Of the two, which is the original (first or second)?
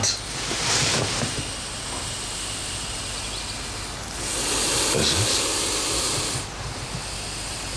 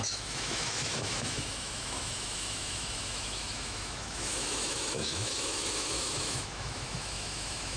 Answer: first